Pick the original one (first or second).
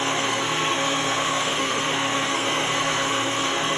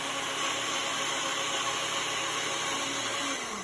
second